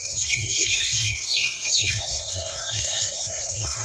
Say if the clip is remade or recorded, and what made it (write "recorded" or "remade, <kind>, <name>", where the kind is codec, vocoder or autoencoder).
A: remade, codec, SNAC